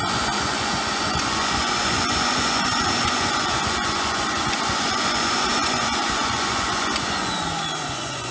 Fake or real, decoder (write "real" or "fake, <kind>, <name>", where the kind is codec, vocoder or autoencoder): fake, vocoder, Vocos